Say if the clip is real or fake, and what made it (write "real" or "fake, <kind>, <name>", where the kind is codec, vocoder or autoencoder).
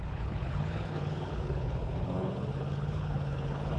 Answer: fake, codec, HILCodec